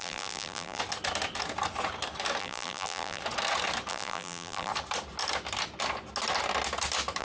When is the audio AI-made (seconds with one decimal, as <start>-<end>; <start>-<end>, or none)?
0.0-0.8; 2.4-3.2; 3.9-4.7